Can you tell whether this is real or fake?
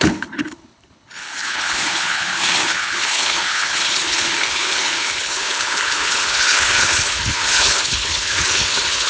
fake